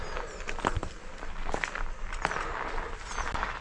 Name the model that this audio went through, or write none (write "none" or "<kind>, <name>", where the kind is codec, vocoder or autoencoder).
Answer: none